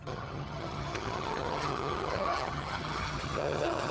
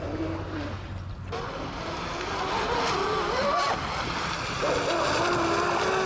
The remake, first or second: first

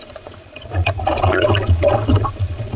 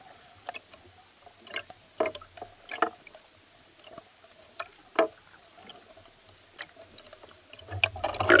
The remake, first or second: first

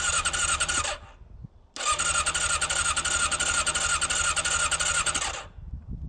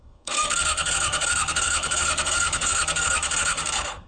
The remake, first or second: second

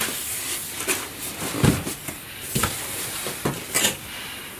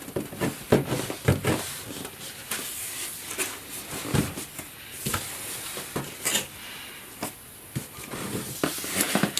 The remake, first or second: first